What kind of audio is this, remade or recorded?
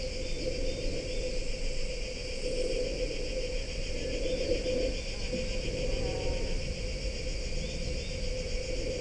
recorded